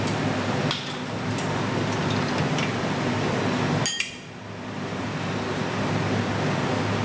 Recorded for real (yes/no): yes